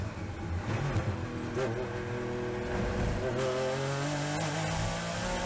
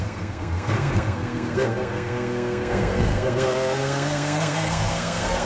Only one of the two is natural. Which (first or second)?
first